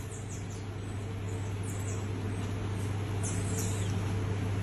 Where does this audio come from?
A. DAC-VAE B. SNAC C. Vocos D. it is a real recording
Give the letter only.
D